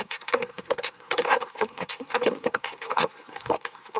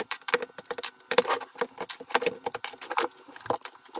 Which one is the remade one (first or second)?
first